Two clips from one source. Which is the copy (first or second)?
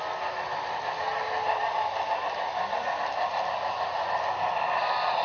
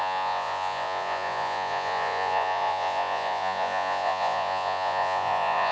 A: second